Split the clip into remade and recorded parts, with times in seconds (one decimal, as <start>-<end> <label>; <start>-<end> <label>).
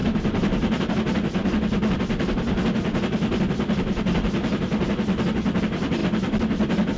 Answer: 0.0-0.9 remade; 0.9-7.0 recorded